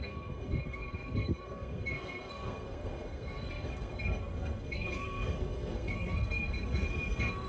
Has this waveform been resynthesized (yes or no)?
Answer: yes